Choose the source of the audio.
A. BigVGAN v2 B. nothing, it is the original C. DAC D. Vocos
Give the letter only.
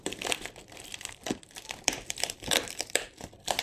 A